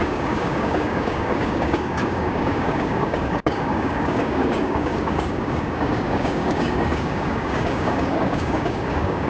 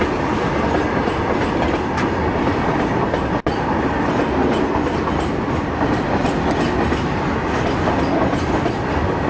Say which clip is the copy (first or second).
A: first